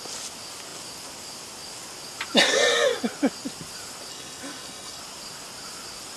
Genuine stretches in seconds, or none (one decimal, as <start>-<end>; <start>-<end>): 0.0-4.1; 5.0-6.2